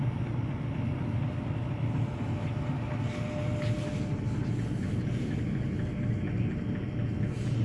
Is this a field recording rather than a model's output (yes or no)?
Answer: yes